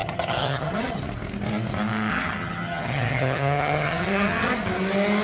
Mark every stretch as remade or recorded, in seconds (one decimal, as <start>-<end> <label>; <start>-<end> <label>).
0.0-1.0 remade; 1.0-2.1 recorded; 2.1-4.5 remade; 4.5-5.2 recorded